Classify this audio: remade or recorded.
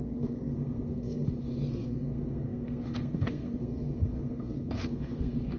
remade